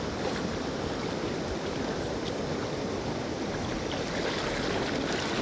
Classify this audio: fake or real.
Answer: real